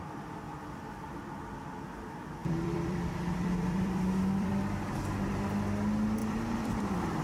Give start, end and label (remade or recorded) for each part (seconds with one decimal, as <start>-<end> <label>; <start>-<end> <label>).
0.0-2.4 recorded; 2.4-4.5 remade; 4.5-6.2 recorded; 6.2-7.2 remade